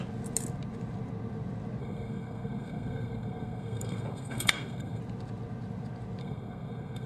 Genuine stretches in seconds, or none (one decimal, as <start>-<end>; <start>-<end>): 0.0-1.8; 5.0-6.2